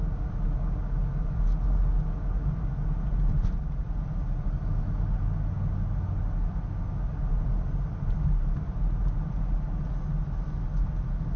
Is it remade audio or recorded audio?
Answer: recorded